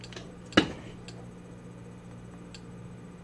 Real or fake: real